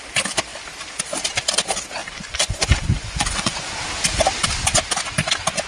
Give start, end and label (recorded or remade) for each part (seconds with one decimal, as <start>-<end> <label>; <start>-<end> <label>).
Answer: 0.0-2.0 recorded; 2.0-3.7 remade; 3.7-5.7 recorded